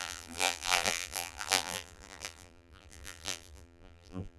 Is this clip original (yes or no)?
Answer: no